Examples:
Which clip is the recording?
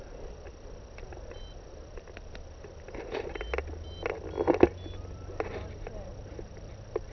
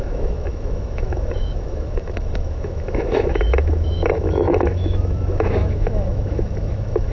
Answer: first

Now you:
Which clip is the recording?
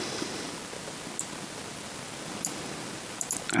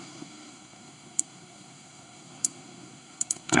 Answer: first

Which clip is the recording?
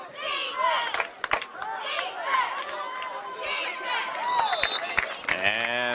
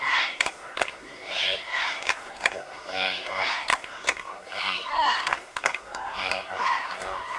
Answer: first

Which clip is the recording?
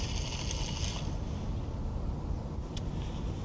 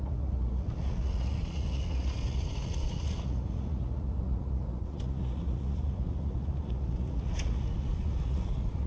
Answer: first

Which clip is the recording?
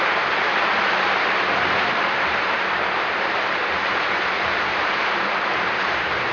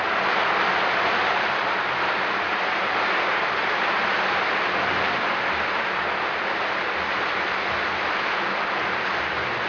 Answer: second